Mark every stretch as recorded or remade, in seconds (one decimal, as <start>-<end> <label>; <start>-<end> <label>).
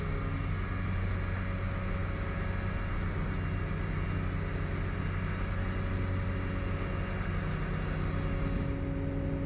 0.0-9.5 recorded